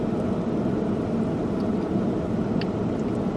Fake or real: fake